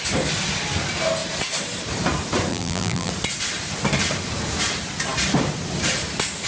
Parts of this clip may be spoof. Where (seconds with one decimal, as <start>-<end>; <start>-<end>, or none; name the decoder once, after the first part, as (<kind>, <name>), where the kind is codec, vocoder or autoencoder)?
2.5-3.1 (vocoder, BigVGAN v2)